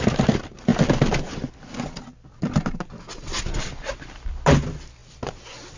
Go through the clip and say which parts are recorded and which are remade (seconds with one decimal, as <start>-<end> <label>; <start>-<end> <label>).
0.0-5.8 recorded